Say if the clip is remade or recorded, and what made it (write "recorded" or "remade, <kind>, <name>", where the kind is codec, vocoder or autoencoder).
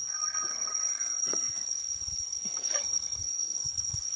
remade, codec, SNAC